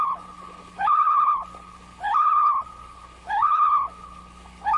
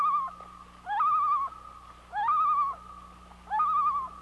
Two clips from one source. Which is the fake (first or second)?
first